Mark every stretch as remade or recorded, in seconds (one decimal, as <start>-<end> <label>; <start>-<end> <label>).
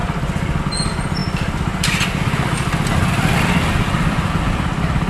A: 0.0-5.1 recorded